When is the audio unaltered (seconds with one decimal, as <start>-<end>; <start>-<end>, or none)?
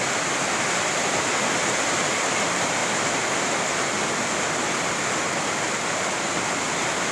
1.6-2.1; 2.8-7.1